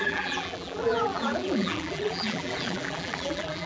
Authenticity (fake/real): fake